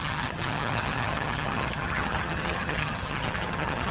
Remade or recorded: remade